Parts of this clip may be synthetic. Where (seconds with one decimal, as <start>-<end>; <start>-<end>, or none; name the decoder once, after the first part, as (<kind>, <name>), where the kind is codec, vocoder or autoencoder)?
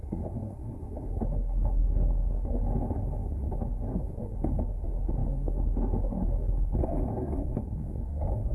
0.0-8.5 (codec, SNAC)